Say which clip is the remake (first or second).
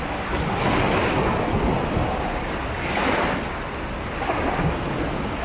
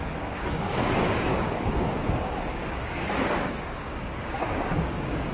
second